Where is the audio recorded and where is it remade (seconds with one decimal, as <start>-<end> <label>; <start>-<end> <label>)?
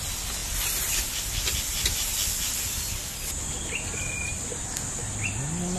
0.0-5.8 recorded